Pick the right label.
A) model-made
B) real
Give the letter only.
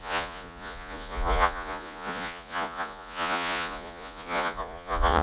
A